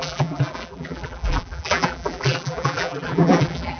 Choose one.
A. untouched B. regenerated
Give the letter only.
B